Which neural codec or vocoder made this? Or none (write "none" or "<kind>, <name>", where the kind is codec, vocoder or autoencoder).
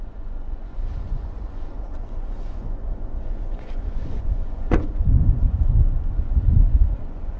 vocoder, Vocos